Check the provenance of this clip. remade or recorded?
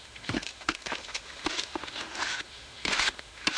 remade